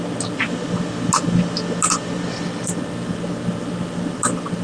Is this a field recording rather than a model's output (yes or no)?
yes